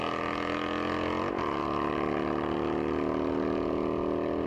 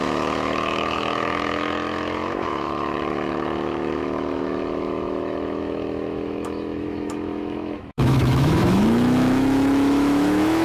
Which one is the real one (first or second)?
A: first